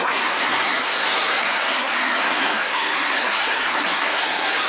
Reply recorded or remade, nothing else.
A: remade